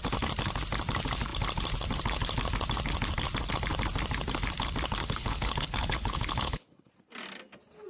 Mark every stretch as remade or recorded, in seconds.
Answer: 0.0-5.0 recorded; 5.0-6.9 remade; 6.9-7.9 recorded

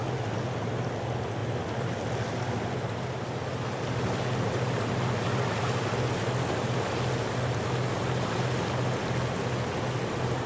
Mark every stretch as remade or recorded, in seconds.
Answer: 0.0-10.5 recorded